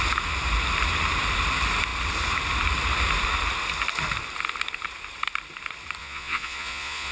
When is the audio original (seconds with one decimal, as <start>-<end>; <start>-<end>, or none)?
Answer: 0.0-6.0